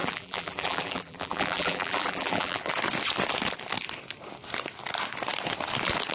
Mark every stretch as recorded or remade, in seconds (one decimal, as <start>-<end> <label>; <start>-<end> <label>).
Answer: 0.0-2.7 remade; 2.7-6.1 recorded